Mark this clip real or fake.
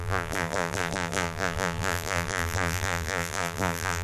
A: fake